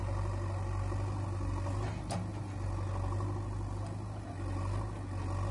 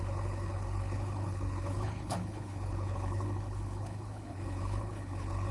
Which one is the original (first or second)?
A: first